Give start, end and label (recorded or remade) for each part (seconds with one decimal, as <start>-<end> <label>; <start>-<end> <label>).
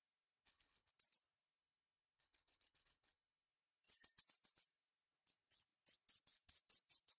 0.0-0.4 recorded; 0.4-0.9 remade; 0.9-1.6 recorded; 1.6-3.5 remade; 3.5-7.2 recorded